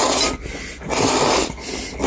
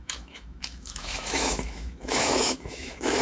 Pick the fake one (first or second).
second